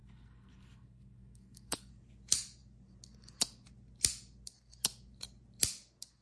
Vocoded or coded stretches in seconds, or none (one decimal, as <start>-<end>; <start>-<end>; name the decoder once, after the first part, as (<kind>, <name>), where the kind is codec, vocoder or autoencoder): 0.0-1.9 (codec, SNAC)